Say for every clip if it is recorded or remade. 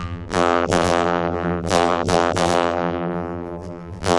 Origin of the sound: remade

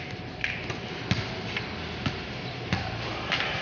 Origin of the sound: recorded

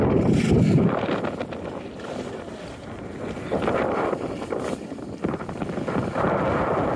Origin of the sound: recorded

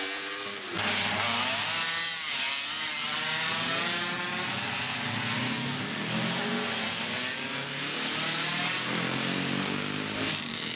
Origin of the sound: recorded